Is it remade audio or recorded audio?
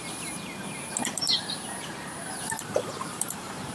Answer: remade